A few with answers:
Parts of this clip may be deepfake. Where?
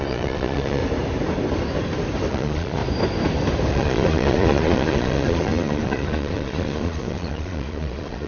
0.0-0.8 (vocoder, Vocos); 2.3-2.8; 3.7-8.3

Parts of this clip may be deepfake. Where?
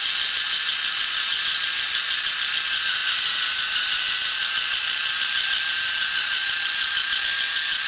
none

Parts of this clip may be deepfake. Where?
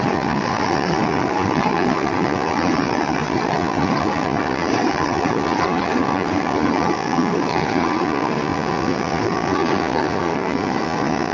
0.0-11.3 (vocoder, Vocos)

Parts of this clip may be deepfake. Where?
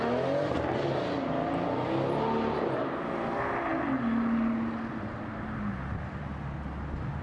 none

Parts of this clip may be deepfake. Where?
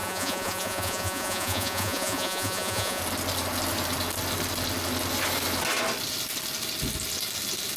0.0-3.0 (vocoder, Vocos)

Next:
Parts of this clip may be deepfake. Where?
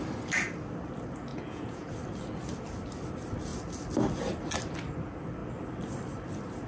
1.3-1.9 (vocoder, Vocos)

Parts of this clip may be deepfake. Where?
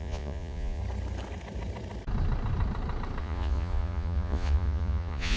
0.0-0.8 (vocoder, Vocos); 3.2-5.4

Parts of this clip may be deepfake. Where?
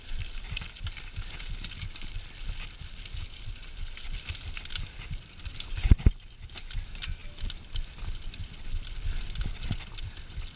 none